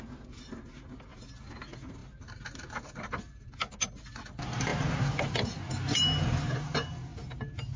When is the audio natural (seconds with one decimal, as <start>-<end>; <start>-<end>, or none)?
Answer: 0.0-7.8